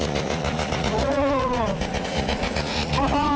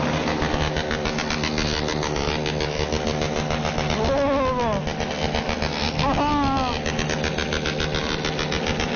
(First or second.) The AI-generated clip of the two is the first